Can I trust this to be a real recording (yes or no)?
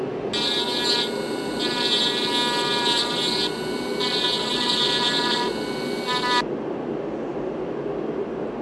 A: yes